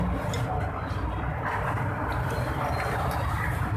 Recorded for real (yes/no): yes